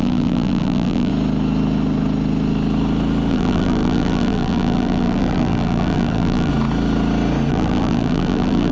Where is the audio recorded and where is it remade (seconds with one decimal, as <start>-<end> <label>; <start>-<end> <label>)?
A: 0.0-1.1 remade; 1.1-3.3 recorded; 3.3-6.5 remade; 6.5-7.5 recorded; 7.5-8.7 remade